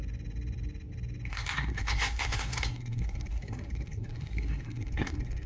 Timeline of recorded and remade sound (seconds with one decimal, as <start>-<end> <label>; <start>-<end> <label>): 0.0-1.3 recorded; 1.3-5.5 remade